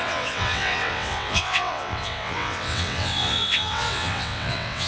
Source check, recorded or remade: remade